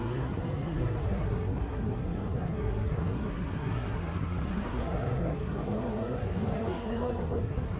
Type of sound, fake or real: fake